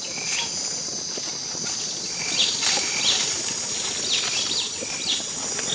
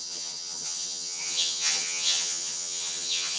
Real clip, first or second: first